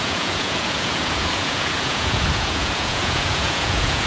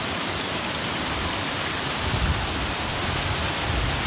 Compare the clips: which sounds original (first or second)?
second